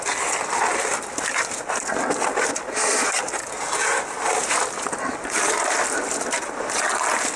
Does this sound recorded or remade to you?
recorded